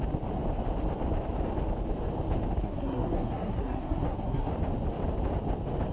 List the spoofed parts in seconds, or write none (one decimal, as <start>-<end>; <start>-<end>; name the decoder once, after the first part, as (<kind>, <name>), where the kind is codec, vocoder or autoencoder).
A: 2.6-4.5 (codec, SNAC)